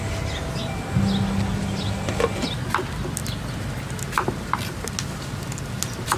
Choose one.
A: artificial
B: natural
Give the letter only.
B